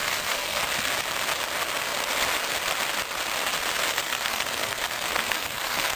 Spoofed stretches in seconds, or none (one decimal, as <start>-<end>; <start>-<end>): 0.0-0.6; 3.9-6.0

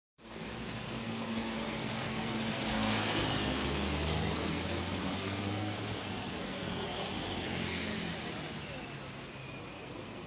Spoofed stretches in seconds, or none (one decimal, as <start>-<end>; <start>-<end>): 0.0-7.9; 9.7-10.3

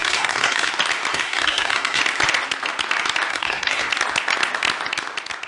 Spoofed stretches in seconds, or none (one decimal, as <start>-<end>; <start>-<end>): 0.0-0.7; 1.1-2.0; 3.3-3.9

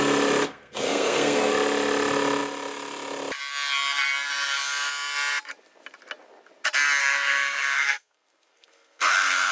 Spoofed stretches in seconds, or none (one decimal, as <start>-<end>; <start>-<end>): 0.5-1.5; 7.0-9.5

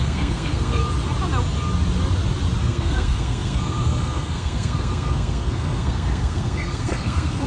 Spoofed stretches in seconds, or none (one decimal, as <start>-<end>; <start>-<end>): 0.0-0.8; 2.6-7.5

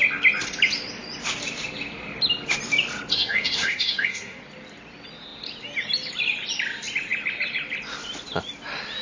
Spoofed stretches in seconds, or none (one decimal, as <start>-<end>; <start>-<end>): 3.1-4.4

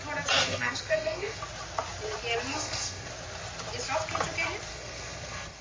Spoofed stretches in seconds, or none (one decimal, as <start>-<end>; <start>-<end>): 0.4-1.4; 2.5-3.1; 4.7-5.6